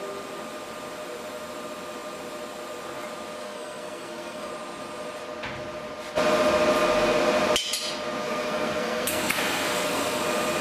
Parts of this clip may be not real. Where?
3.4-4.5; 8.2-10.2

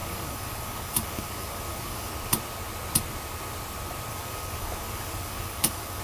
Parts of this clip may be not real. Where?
0.0-2.1; 4.1-6.0